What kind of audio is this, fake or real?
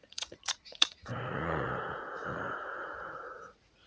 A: fake